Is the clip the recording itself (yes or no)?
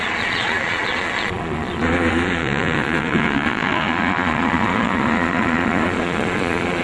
no